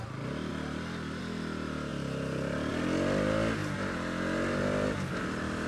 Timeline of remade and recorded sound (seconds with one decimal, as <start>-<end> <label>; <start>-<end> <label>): 0.0-5.7 recorded